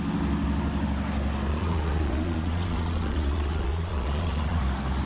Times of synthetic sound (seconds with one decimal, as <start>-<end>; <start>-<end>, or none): 1.5-4.6